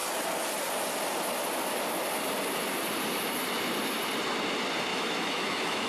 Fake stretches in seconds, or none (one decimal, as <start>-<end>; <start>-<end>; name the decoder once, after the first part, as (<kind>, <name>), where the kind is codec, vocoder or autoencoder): 4.9-5.9 (autoencoder, DAC-VAE)